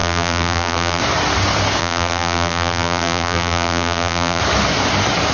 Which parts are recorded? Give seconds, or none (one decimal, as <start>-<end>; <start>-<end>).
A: 1.0-1.8; 4.4-5.3